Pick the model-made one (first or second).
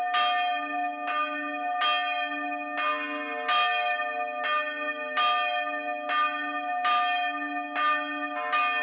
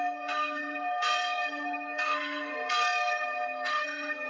second